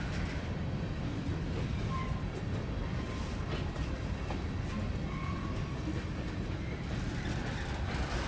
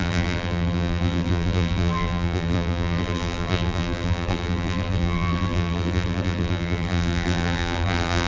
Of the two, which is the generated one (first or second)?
second